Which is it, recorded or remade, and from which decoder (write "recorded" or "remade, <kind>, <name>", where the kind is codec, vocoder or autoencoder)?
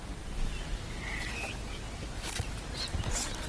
recorded